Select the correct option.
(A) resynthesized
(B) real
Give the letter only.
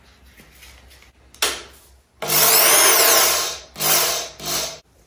B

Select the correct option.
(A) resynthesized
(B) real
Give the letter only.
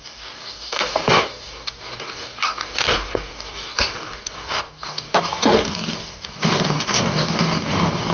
A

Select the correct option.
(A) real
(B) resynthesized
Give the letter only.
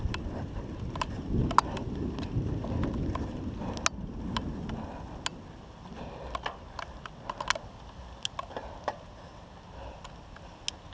A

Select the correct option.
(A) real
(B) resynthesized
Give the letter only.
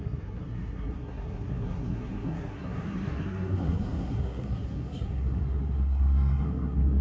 B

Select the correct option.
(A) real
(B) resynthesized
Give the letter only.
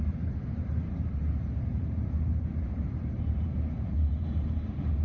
B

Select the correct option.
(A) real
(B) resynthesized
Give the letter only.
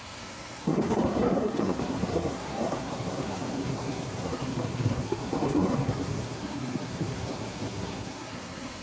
B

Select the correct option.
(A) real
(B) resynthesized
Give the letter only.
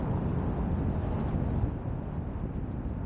A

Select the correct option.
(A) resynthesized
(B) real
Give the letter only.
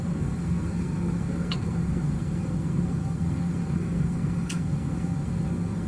A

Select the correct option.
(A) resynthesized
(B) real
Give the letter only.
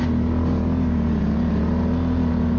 B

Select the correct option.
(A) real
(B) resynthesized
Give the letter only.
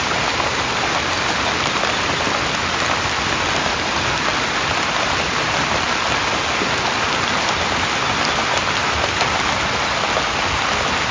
A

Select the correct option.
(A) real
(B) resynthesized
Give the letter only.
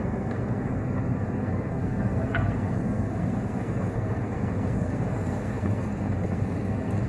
B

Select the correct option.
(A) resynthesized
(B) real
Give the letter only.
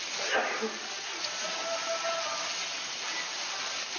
B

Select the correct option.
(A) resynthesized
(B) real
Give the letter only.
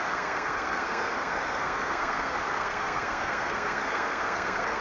A